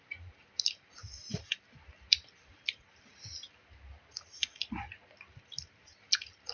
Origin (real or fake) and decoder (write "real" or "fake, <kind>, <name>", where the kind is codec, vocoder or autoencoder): real